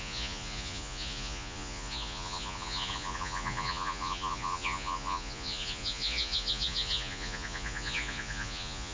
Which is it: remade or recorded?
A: remade